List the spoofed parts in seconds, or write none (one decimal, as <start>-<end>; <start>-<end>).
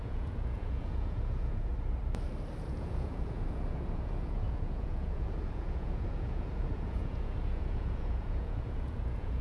0.0-1.7; 2.6-9.4